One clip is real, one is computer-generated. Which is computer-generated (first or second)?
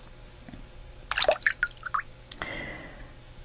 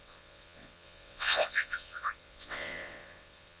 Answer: second